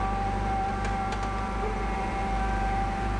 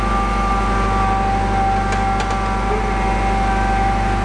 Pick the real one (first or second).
second